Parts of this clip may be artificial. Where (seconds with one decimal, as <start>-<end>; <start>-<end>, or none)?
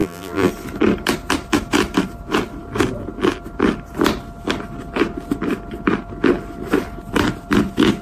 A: 0.0-0.5